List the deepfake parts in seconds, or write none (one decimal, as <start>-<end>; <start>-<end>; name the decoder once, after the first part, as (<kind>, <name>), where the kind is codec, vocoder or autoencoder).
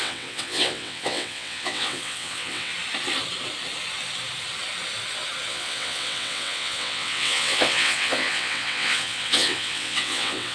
0.0-2.7 (vocoder, WaveNeXt); 5.5-10.5